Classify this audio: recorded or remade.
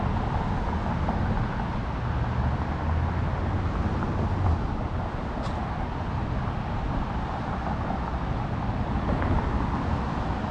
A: recorded